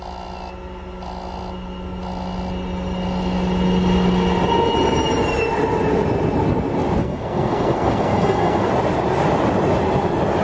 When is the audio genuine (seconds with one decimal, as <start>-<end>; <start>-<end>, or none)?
0.0-7.0; 8.7-10.4